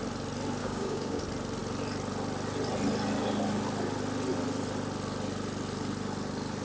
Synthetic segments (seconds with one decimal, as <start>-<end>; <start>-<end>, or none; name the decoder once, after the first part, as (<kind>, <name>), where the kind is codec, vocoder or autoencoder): 0.6-1.2 (codec, DAC)